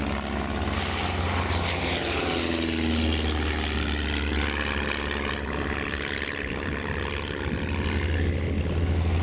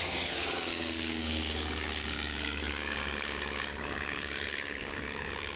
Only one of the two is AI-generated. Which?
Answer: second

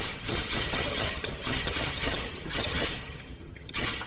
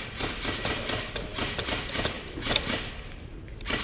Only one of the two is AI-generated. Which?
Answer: first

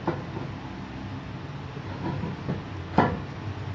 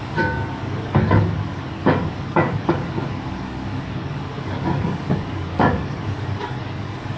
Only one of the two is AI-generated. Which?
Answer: second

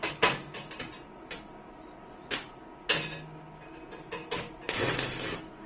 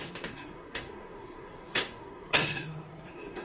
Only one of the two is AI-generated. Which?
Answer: second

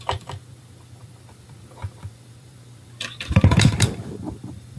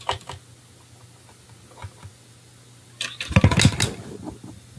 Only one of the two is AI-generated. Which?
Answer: first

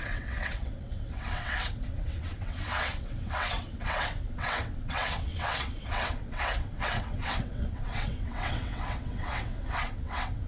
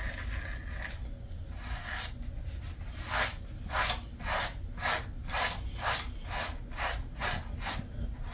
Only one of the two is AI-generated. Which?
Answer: first